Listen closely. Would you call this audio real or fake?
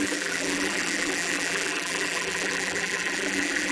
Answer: fake